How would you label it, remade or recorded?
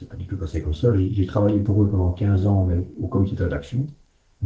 remade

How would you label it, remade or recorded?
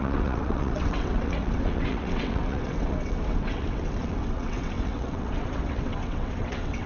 remade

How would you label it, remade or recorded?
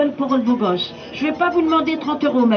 recorded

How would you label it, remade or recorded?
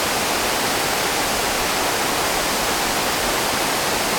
recorded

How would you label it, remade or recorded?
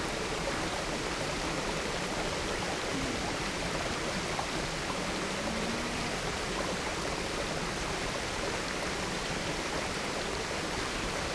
remade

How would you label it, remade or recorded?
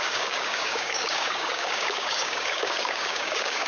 remade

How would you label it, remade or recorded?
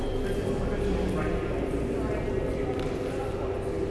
recorded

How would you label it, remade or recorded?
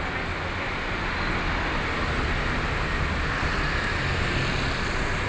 recorded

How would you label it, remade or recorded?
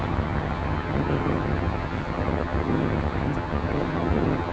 remade